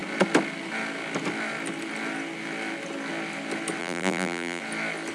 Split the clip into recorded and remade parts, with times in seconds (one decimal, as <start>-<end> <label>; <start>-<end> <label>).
0.0-3.8 recorded; 3.8-4.6 remade; 4.6-5.1 recorded